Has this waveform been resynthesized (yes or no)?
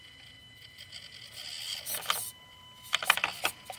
no